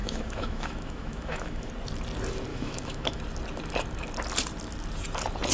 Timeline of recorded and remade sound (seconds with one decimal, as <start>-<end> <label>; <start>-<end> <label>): 0.0-1.7 remade; 1.7-2.5 recorded; 2.5-3.2 remade; 3.2-5.5 recorded